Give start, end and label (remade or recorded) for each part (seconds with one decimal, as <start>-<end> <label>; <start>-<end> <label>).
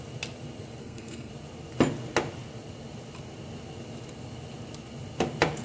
0.0-0.8 recorded; 0.8-1.3 remade; 1.3-5.6 recorded